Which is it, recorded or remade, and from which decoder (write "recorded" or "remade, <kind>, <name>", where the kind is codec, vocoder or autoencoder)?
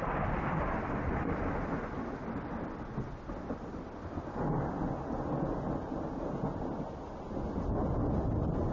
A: recorded